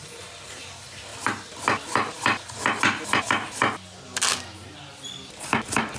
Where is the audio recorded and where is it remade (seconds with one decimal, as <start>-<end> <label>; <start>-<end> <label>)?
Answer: 0.0-6.0 recorded